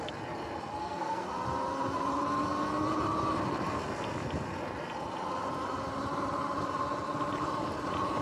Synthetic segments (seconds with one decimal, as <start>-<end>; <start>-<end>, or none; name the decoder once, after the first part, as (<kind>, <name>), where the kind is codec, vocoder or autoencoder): 0.8-1.3 (codec, SNAC)